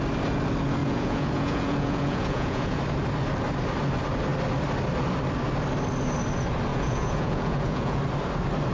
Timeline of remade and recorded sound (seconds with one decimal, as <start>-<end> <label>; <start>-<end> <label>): 0.0-0.8 recorded; 0.8-2.8 remade; 2.8-6.7 recorded; 6.7-8.0 remade; 8.0-8.7 recorded